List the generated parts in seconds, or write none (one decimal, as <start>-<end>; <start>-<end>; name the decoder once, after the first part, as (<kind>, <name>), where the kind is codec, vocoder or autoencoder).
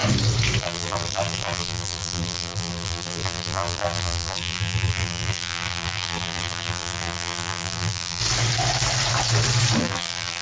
0.6-8.2 (vocoder, BigVGAN v2); 9.8-10.4